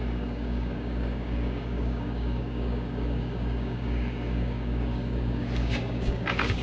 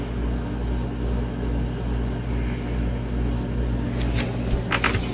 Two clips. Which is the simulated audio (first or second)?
first